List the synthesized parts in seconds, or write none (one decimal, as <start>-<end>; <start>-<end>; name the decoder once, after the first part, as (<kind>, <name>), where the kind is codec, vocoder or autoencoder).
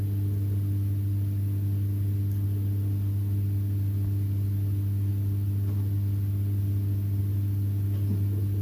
none